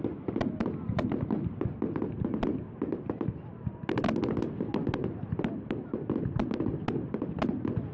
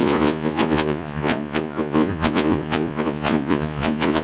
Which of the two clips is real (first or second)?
first